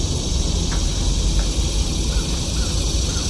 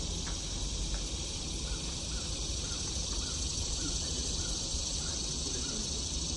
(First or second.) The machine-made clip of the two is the second